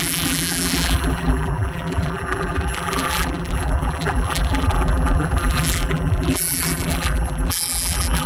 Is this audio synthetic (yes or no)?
yes